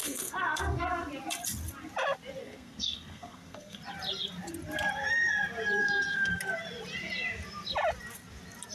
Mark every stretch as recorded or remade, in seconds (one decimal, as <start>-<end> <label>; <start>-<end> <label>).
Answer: 0.0-1.1 remade; 1.1-2.4 recorded; 2.4-3.8 remade; 3.8-5.8 recorded; 5.8-6.4 remade; 6.4-8.7 recorded